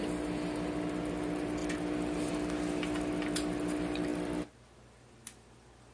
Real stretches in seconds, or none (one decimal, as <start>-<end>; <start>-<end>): 0.0-5.9